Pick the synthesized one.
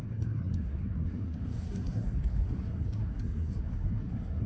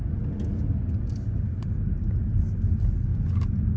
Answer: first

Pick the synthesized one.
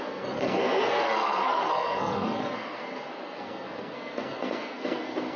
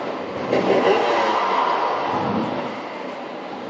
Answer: first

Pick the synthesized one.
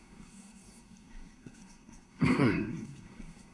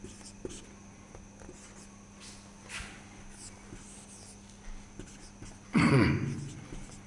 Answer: first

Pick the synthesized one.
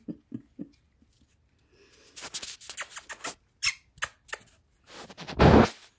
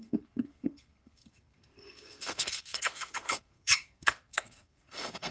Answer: second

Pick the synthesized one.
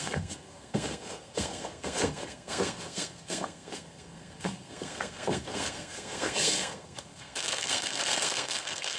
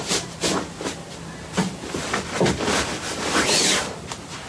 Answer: first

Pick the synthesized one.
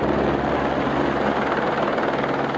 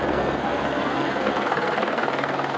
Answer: second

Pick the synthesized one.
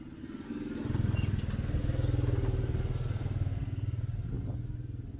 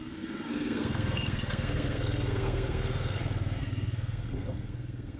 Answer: second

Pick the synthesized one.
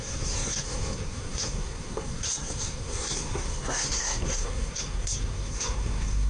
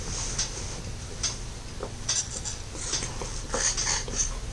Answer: first